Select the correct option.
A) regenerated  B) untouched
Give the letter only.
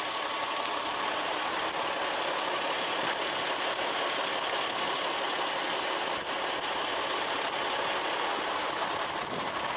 B